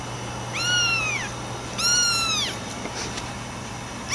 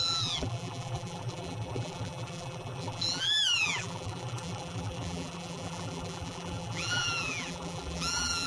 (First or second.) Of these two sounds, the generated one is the second